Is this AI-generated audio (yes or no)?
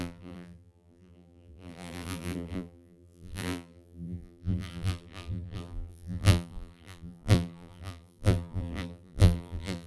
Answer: yes